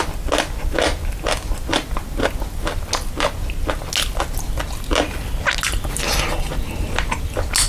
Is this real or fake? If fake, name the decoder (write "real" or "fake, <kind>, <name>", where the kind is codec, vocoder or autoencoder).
real